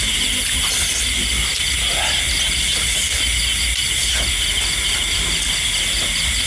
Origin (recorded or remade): recorded